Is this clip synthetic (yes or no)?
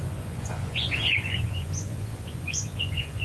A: yes